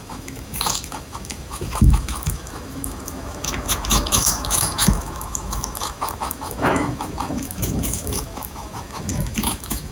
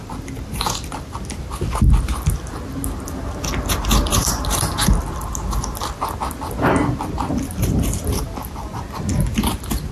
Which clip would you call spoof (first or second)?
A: first